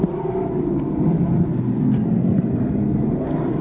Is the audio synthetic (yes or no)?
no